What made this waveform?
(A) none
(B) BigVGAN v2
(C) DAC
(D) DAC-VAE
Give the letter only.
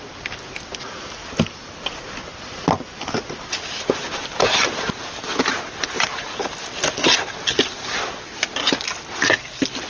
A